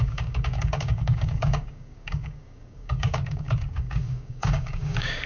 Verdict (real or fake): fake